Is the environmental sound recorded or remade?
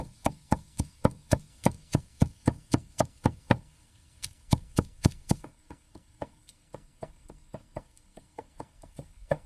remade